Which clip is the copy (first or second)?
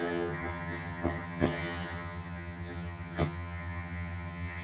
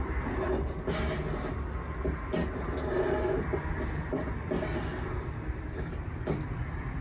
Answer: first